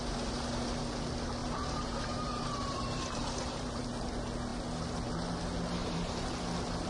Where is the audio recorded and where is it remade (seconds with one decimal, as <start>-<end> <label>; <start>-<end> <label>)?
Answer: 0.0-1.4 recorded; 1.4-3.8 remade; 3.8-5.8 recorded; 5.8-6.3 remade; 6.3-6.9 recorded